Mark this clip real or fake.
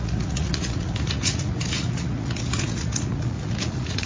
fake